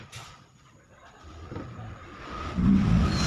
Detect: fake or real real